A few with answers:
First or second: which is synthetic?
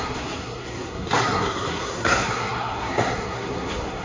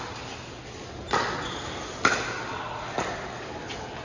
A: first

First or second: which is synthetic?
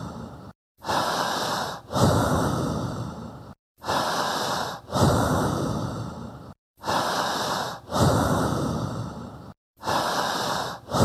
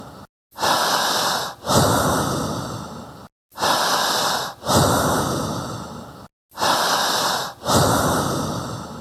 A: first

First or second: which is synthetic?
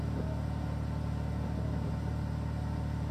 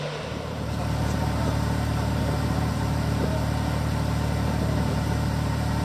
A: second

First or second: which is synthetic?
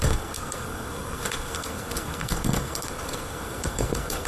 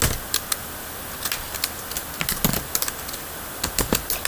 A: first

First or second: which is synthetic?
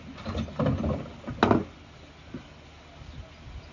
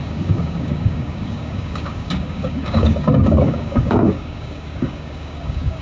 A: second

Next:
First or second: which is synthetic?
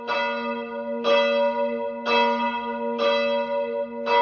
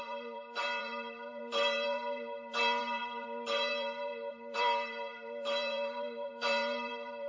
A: second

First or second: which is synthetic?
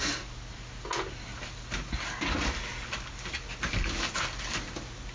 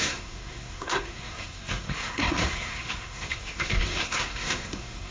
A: second